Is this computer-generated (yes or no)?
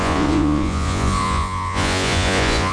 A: yes